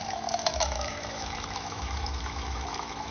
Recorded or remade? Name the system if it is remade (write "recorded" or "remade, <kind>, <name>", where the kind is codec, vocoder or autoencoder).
remade, autoencoder, DAC-VAE